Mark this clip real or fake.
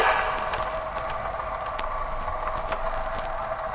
real